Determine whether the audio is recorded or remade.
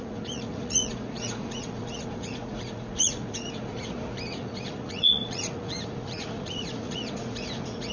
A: remade